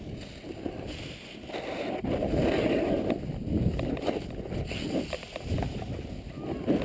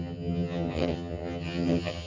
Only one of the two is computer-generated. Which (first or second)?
second